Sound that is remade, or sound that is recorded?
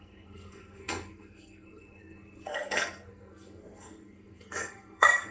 remade